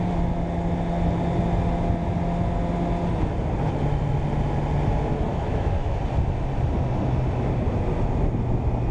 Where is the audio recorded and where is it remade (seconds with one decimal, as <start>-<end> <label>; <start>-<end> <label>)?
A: 0.0-5.3 recorded; 5.3-6.0 remade; 6.0-8.9 recorded